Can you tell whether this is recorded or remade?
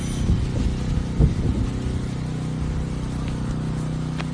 recorded